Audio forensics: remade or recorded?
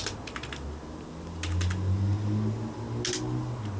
recorded